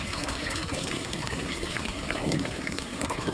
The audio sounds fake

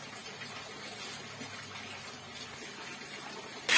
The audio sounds real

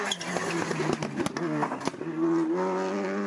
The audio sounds real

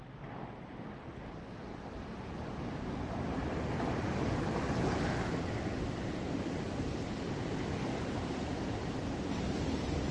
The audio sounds real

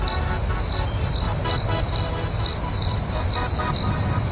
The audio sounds real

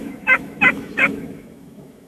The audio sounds fake